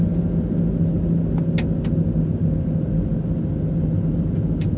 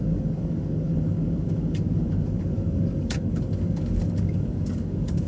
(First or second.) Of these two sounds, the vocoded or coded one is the second